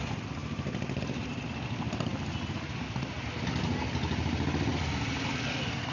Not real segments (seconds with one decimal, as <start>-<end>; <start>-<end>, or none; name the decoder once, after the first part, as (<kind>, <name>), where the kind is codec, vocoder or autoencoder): none